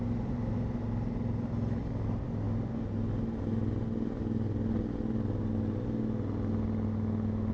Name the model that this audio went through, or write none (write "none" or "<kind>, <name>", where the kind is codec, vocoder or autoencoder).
none